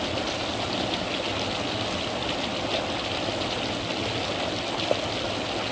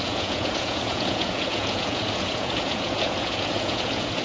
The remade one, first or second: second